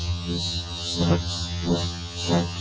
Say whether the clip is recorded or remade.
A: remade